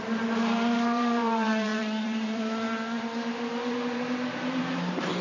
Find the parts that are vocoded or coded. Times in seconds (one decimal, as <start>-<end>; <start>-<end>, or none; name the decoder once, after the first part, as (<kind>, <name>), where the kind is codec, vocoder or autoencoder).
0.0-5.2 (vocoder, BigVGAN v2)